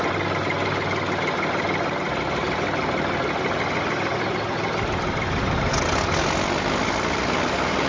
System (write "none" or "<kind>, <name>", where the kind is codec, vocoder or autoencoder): none